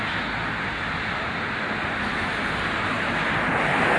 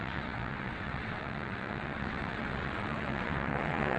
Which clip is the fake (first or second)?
second